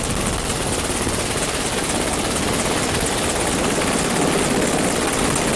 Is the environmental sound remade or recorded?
recorded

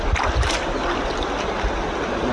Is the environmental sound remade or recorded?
recorded